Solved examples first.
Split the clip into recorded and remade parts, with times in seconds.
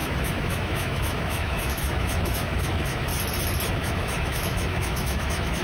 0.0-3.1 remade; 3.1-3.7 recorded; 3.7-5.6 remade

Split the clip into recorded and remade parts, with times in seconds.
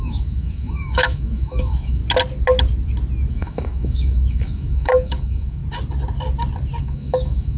0.0-2.0 remade; 2.0-3.3 recorded; 3.3-5.6 remade; 5.6-6.8 recorded; 6.8-7.6 remade